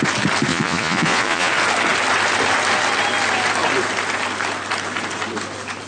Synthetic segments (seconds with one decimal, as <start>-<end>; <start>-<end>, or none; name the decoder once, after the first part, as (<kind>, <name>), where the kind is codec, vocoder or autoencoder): 0.5-1.5 (vocoder, Vocos)

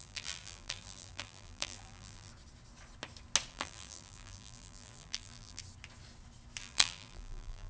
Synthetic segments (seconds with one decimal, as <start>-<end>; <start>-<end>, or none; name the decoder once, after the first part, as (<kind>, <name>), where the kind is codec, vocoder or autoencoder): 0.0-2.3 (vocoder, BigVGAN v2); 3.5-5.6; 6.6-7.7

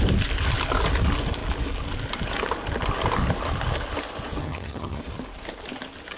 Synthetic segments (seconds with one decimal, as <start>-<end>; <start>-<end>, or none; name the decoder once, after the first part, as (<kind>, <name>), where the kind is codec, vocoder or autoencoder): 4.4-5.0 (vocoder, HiFi-GAN)

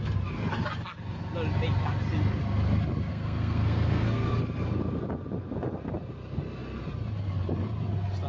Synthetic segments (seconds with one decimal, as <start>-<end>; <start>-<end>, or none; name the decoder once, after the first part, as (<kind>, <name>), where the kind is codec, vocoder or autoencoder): 3.1-4.3 (codec, SNAC)

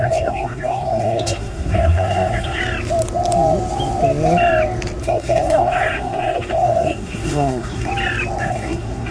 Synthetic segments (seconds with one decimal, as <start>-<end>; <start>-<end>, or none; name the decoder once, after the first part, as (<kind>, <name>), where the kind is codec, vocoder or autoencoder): 0.0-2.6 (codec, SNAC); 5.0-7.9; 8.4-9.1